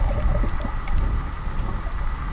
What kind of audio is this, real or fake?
real